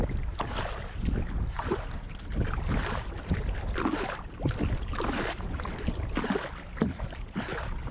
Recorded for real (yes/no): yes